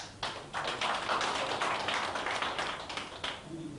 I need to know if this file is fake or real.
real